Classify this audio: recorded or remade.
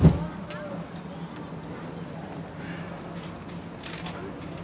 recorded